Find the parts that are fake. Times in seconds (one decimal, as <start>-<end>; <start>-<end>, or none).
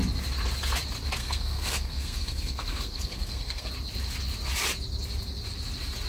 1.2-3.7